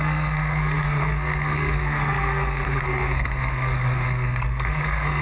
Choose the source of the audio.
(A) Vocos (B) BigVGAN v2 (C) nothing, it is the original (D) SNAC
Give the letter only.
D